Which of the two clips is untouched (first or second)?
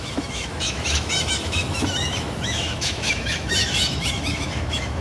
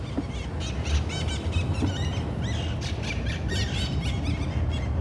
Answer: second